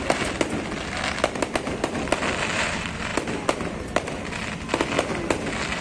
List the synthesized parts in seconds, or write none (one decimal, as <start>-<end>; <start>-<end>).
3.1-4.3